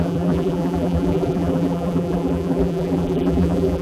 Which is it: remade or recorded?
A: remade